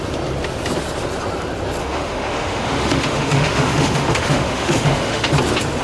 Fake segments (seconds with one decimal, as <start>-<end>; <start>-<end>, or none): 1.8-5.3